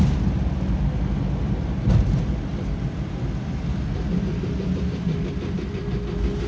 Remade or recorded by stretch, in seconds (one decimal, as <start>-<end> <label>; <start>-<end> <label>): 0.0-6.5 recorded